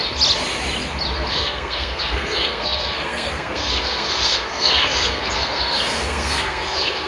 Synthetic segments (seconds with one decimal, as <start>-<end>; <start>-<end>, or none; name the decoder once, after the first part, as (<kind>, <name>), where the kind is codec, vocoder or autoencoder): 1.3-7.1 (codec, SNAC)